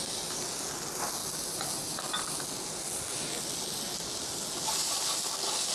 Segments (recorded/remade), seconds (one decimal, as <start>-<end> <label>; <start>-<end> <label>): 0.0-5.7 recorded